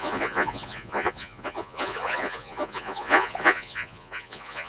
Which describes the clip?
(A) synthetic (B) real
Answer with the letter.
A